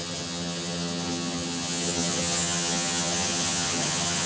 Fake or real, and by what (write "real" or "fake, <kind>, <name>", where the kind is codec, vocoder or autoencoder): fake, vocoder, HiFi-GAN